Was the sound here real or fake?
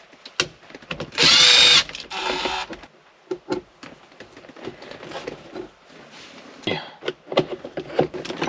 real